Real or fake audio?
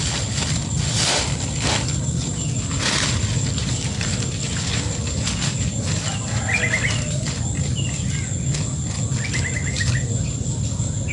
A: real